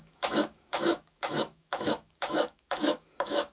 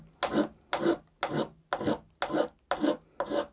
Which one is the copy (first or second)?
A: first